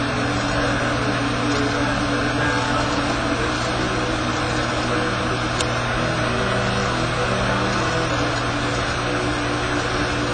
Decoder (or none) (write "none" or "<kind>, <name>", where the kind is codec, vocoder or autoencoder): none